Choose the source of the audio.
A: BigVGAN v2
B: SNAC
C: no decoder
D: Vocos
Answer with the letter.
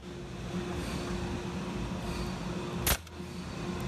C